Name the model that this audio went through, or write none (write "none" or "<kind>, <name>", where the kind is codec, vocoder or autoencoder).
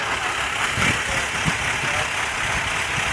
none